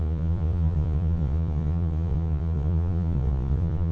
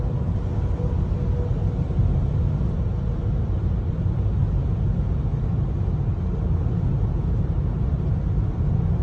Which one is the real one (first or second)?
second